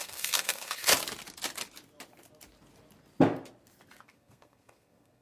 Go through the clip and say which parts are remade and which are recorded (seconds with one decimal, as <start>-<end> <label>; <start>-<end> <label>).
0.0-0.9 remade; 0.9-4.0 recorded; 4.0-5.2 remade